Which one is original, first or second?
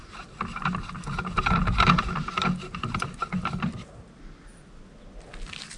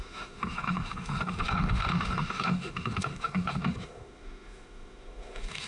first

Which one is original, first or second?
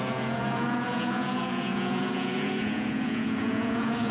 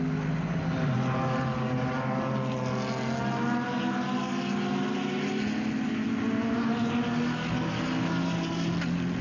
second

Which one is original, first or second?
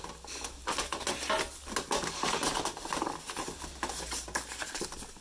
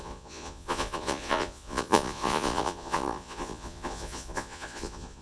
first